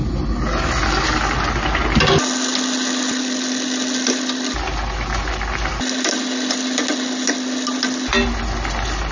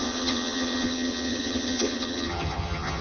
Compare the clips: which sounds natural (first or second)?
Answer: first